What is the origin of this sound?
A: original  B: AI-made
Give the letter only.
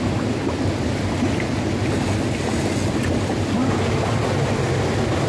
A